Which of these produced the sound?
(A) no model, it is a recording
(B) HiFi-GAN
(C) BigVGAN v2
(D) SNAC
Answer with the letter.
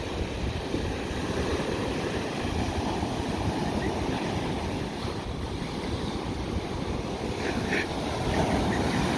C